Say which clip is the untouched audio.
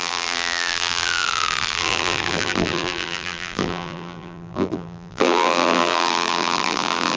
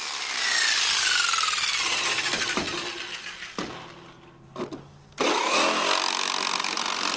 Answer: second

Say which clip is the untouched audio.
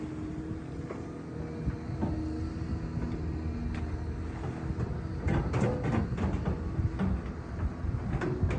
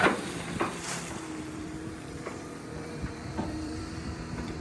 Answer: first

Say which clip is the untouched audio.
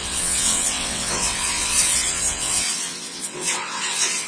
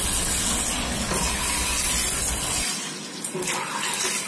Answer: second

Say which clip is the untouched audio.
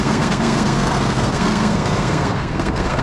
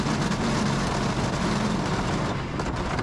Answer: second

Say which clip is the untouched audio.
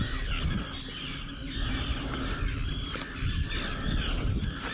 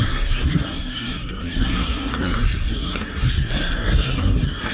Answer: first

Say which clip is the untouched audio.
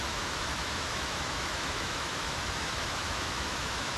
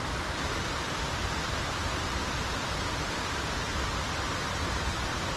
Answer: second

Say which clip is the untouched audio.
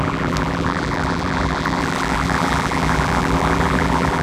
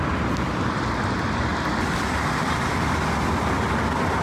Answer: second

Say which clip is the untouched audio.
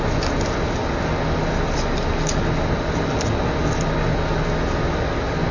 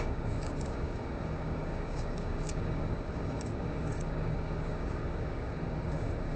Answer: first